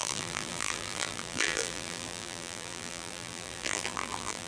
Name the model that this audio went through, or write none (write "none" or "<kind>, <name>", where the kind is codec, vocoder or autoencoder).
vocoder, BigVGAN v2